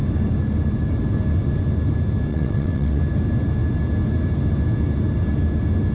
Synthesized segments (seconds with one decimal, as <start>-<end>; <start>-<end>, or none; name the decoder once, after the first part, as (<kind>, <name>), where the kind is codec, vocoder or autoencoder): 2.3-3.0 (vocoder, WaveNeXt)